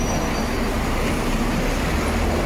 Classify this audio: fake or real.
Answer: real